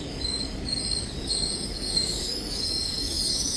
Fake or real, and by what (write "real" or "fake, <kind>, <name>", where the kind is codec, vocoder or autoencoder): fake, codec, DAC